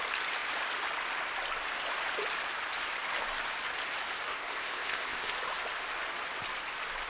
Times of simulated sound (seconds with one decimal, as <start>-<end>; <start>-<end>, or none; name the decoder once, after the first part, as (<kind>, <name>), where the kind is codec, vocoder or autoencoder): 4.3-5.3 (codec, ZipCodec)